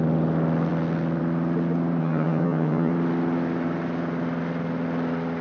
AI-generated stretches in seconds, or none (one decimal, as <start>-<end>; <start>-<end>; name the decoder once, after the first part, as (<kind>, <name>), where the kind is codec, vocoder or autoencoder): 2.0-2.9 (vocoder, HiFi-GAN)